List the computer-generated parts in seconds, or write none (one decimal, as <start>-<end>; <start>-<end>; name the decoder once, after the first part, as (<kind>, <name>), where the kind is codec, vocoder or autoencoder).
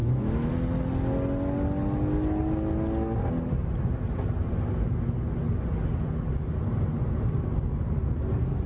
0.0-0.5 (autoencoder, DAC-VAE)